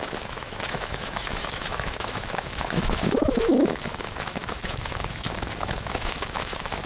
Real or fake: fake